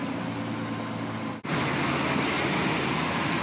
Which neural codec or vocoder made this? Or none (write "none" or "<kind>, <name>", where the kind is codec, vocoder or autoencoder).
none